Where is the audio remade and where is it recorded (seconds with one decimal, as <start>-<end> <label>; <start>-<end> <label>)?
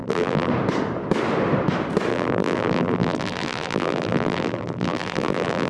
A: 0.0-0.5 remade; 0.5-2.1 recorded; 2.1-5.7 remade